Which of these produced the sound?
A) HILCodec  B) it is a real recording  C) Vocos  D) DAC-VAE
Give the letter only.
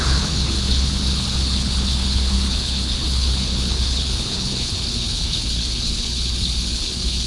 A